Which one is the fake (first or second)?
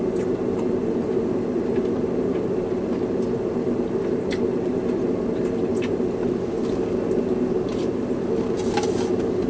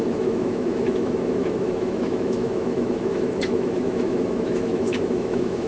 second